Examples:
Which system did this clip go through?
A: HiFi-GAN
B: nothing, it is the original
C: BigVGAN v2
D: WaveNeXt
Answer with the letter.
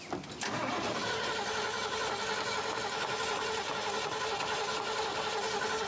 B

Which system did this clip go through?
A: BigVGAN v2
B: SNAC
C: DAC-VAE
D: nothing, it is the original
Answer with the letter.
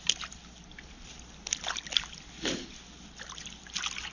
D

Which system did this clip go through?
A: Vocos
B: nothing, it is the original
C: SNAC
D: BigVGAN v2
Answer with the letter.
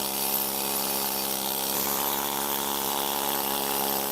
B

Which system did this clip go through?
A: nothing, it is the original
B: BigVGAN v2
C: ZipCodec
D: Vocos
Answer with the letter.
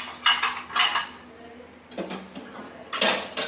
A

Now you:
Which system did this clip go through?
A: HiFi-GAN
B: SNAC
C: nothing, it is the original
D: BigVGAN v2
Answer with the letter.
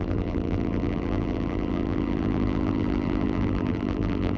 D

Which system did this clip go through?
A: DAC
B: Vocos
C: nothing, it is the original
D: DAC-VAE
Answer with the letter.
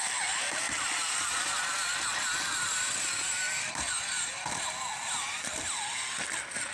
C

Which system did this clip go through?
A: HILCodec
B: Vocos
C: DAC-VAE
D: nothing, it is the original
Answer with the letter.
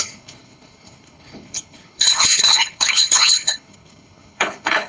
A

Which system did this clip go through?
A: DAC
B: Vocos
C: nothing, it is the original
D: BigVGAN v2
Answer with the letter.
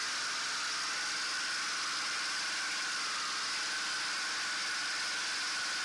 C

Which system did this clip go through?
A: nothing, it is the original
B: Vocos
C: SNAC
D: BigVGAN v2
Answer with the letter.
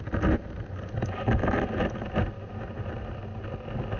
A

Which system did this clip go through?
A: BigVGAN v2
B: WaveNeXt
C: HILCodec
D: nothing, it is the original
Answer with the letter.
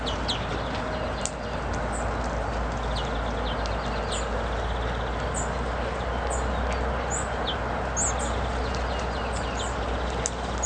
D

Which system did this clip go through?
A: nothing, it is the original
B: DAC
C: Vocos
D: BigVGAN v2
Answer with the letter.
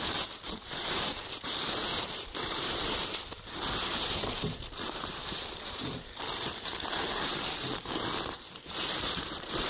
D